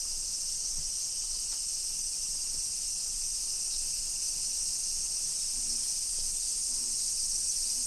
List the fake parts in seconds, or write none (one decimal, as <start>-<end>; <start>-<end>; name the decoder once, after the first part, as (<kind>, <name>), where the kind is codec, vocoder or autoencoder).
none